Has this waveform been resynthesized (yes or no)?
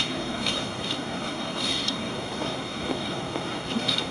yes